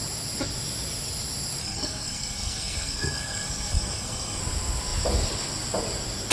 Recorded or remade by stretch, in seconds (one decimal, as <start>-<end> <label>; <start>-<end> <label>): 0.0-1.6 recorded; 1.6-4.4 remade; 4.4-6.3 recorded